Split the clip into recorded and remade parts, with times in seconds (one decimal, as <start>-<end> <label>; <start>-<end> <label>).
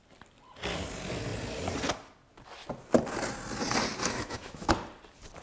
0.0-4.0 recorded; 4.0-4.7 remade; 4.7-5.4 recorded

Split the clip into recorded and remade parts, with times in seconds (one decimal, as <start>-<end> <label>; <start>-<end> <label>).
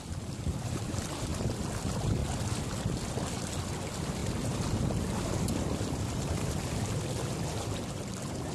0.0-1.3 remade; 1.3-1.8 recorded; 1.8-2.2 remade; 2.2-3.7 recorded; 3.7-8.5 remade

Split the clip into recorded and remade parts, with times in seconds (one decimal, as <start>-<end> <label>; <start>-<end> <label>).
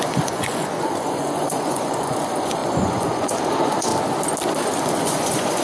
0.0-3.9 remade; 3.9-4.8 recorded; 4.8-5.6 remade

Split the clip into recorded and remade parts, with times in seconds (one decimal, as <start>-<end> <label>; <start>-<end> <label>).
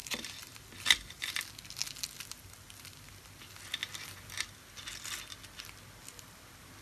0.0-1.2 remade; 1.2-6.8 recorded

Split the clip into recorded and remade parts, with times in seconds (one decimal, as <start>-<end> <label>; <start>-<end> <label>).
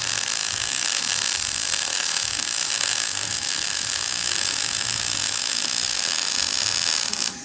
0.0-0.4 recorded; 0.4-1.0 remade; 1.0-1.9 recorded; 1.9-6.3 remade; 6.3-7.4 recorded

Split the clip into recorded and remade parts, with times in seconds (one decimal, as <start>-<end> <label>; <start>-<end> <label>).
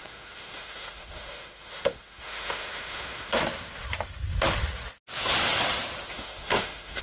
0.0-3.3 remade; 3.3-6.1 recorded; 6.1-7.0 remade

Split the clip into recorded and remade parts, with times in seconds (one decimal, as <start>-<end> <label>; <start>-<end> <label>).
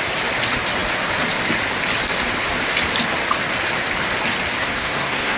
0.0-4.6 recorded; 4.6-5.4 remade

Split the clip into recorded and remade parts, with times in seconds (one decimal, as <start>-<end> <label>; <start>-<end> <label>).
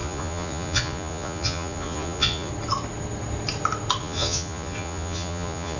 0.0-2.5 remade; 2.5-4.0 recorded; 4.0-5.8 remade